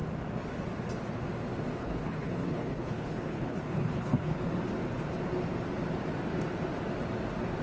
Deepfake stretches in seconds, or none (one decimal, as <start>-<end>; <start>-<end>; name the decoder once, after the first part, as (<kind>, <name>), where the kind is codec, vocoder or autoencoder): 1.8-4.5 (codec, HILCodec)